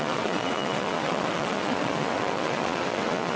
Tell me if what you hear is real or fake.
fake